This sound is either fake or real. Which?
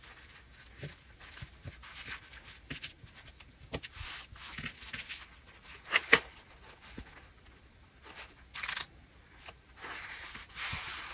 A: real